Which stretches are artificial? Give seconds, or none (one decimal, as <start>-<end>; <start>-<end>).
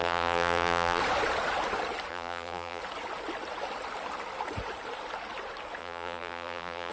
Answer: 0.0-1.0; 2.1-2.8; 5.8-6.9